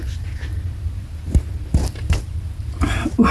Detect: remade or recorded recorded